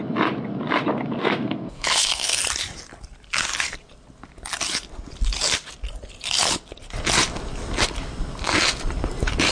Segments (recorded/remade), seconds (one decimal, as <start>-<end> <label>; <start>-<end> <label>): 0.0-1.2 recorded; 1.2-2.4 remade; 2.4-9.5 recorded